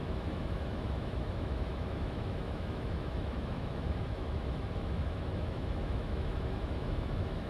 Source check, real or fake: fake